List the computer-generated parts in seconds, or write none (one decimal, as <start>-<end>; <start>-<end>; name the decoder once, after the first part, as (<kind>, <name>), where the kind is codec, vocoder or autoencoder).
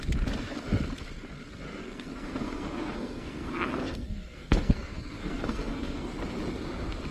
1.8-6.1 (codec, SNAC)